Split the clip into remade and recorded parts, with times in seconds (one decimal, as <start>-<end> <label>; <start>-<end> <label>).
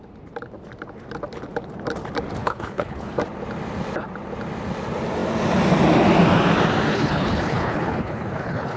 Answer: 0.0-2.4 recorded; 2.4-3.2 remade; 3.2-6.9 recorded; 6.9-8.8 remade